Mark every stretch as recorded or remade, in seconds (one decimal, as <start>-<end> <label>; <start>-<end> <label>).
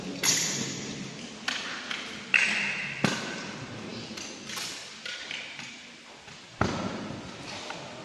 0.0-8.0 recorded